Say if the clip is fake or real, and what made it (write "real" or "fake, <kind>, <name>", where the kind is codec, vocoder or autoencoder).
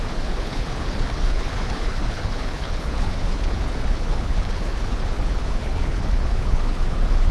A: fake, codec, HILCodec